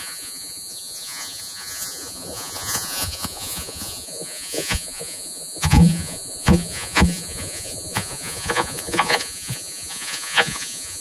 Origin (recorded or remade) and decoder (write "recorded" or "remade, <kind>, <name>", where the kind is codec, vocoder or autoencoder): remade, vocoder, Vocos